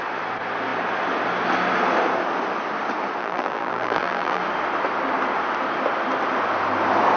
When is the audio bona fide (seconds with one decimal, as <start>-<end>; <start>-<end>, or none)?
0.0-3.2; 4.4-7.2

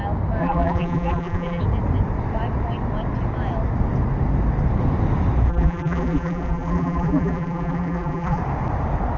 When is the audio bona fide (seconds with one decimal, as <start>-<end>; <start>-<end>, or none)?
0.0-0.4; 1.6-5.5; 8.4-9.2

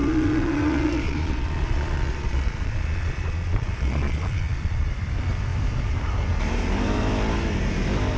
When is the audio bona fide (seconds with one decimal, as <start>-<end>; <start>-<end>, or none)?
4.9-8.2

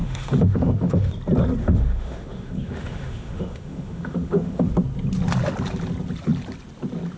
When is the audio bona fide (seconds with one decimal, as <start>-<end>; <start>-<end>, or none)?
1.1-1.6; 4.7-7.2

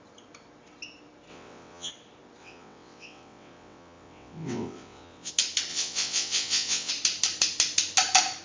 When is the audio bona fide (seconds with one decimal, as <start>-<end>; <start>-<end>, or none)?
0.0-1.3; 1.9-2.4; 5.3-5.7; 6.9-8.4

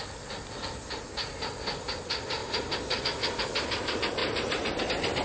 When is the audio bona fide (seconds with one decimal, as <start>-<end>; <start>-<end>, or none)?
0.0-2.4; 3.0-4.2; 4.8-5.2

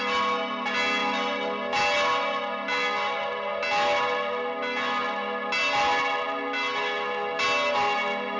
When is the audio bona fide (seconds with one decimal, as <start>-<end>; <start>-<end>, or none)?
0.0-8.4